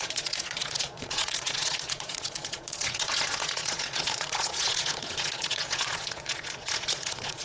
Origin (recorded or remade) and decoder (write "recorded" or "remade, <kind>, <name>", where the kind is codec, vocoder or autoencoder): remade, vocoder, Vocos